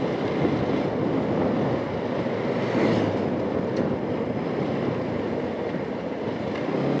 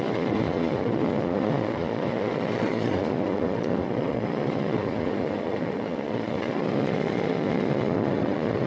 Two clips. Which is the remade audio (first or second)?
second